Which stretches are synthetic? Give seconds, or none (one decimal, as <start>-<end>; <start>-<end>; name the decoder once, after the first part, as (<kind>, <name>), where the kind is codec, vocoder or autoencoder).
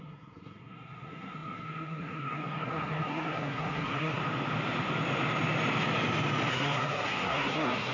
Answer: 0.0-4.2 (codec, SNAC); 6.5-7.9